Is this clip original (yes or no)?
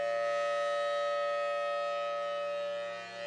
yes